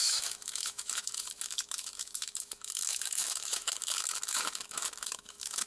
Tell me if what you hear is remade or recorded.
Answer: remade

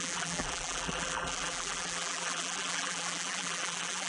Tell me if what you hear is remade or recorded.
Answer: remade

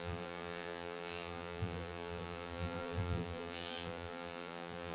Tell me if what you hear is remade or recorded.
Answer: remade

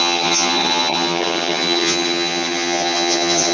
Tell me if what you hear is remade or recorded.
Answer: remade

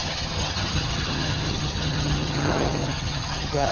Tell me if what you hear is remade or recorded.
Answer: remade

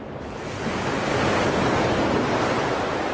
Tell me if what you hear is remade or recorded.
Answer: recorded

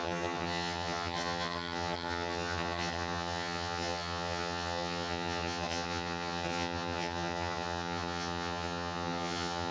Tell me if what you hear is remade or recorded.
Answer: remade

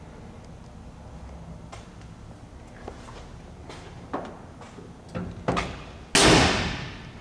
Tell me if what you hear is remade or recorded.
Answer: recorded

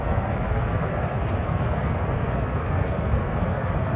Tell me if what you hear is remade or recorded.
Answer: remade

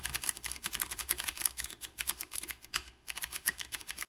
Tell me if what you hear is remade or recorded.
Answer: remade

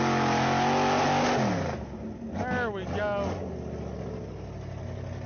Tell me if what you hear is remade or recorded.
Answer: recorded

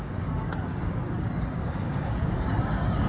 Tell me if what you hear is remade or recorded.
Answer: remade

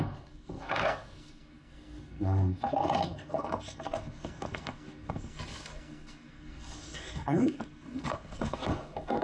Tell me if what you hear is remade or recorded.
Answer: remade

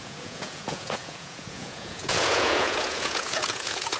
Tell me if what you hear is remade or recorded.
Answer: remade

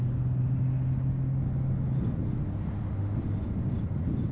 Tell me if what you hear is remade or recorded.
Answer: recorded